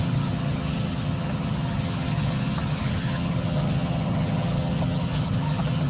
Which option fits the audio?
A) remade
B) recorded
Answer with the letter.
A